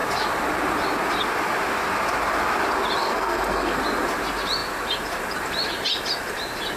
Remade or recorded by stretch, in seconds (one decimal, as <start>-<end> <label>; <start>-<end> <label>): 0.0-3.0 recorded; 3.0-3.8 remade; 3.8-6.8 recorded